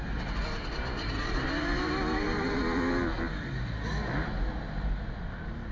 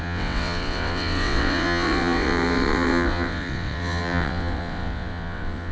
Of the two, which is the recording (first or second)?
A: first